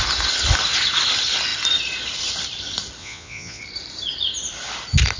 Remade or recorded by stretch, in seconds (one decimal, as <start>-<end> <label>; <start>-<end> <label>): 0.0-3.0 recorded; 3.0-3.6 remade; 3.6-5.2 recorded